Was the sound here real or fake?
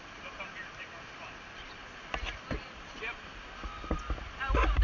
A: real